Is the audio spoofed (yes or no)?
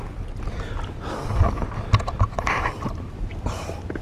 no